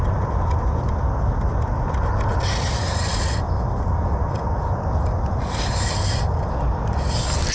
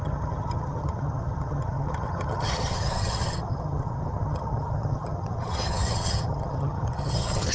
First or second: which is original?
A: first